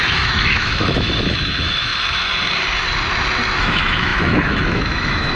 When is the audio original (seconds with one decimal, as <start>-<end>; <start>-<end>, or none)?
1.9-3.6